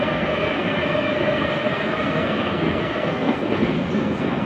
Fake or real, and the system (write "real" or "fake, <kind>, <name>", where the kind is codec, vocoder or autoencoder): fake, codec, SNAC